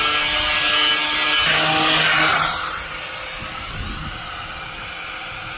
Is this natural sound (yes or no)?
yes